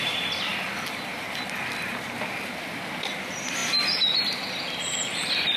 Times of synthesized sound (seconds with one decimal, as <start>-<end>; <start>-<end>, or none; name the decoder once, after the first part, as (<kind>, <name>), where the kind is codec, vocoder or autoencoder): none